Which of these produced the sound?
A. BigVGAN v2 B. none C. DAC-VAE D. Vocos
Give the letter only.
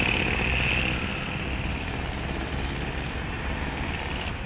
B